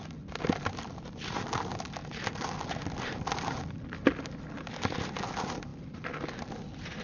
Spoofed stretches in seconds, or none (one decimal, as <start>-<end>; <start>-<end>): none